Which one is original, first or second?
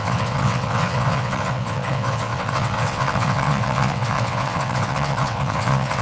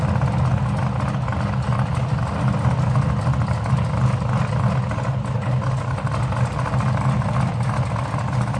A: second